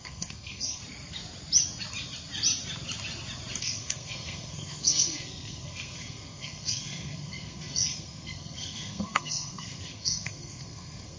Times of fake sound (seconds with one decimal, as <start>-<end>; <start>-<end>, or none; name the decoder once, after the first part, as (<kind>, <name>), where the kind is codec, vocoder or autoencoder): 0.0-0.8 (codec, SNAC); 3.6-11.2